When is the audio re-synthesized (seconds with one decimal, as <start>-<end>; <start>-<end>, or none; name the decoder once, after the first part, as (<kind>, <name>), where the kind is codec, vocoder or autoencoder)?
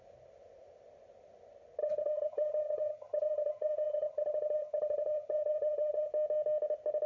1.8-6.1 (vocoder, HiFi-GAN)